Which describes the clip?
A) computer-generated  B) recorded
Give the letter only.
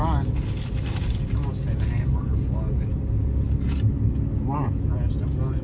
B